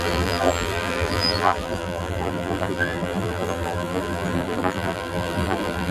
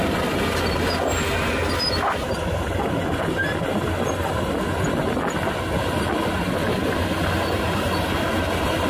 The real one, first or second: second